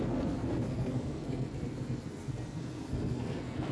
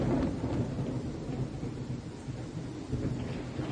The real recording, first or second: second